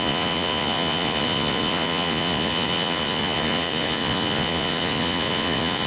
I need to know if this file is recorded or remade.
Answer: remade